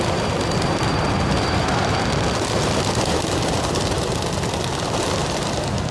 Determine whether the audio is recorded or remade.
recorded